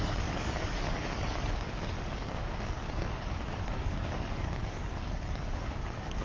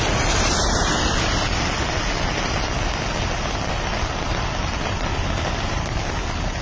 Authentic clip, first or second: second